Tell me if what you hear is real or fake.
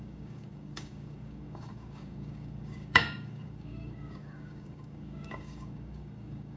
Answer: fake